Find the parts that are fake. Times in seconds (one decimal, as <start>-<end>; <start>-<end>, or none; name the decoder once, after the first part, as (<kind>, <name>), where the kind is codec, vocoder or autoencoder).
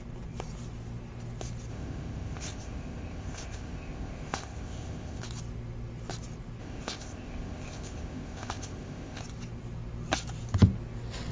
1.7-5.2 (codec, ZipCodec); 6.6-9.2